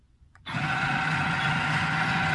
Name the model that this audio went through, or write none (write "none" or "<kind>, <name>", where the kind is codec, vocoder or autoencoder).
vocoder, Vocos